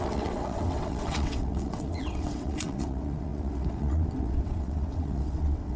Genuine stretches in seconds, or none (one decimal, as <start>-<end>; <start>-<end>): none